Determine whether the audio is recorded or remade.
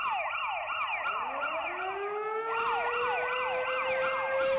recorded